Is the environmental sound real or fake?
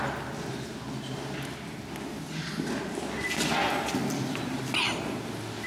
real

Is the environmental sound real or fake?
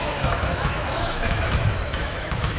fake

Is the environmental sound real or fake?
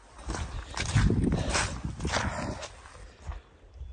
real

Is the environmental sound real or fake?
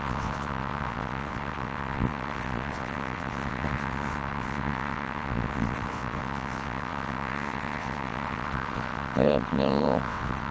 fake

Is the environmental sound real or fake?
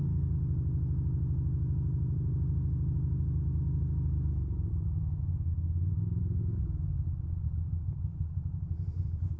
real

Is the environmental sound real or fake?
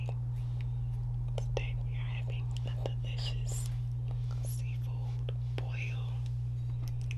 real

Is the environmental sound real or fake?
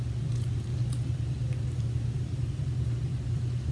fake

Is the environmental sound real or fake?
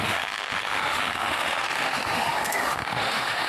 fake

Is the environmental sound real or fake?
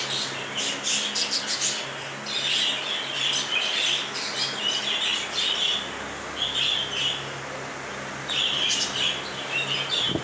real